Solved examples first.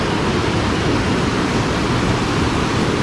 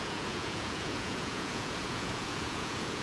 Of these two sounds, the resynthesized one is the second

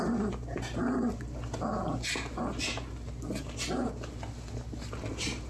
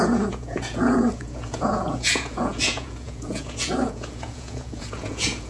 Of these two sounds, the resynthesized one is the second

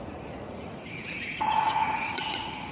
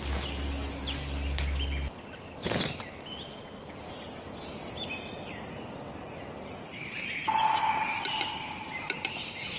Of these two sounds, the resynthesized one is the first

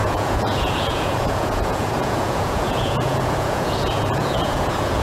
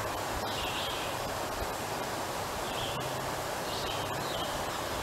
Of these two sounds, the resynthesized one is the first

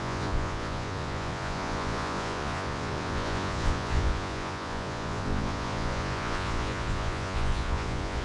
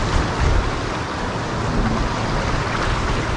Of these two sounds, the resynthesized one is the first